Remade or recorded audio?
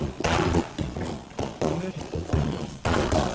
remade